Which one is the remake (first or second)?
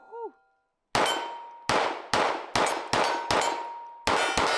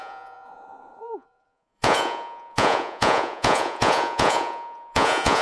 second